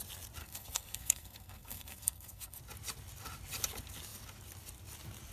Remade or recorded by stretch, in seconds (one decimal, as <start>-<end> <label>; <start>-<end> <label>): 0.0-0.4 recorded; 0.4-2.6 remade; 2.6-5.3 recorded